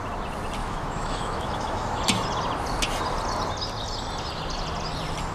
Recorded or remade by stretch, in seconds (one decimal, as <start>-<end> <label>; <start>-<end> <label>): 0.0-0.6 recorded; 0.6-2.0 remade; 2.0-5.3 recorded